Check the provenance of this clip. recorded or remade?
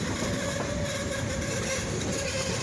remade